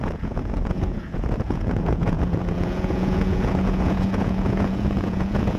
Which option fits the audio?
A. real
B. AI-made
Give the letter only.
B